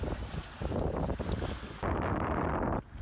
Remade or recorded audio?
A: recorded